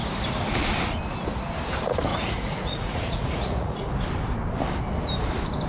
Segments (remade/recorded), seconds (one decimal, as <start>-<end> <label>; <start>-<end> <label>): 0.0-2.1 recorded; 2.1-3.9 remade; 3.9-5.7 recorded